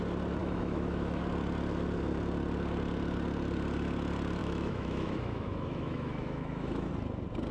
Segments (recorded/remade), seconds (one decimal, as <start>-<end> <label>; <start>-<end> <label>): 0.0-0.4 recorded; 0.4-1.2 remade; 1.2-4.4 recorded; 4.4-6.9 remade; 6.9-7.5 recorded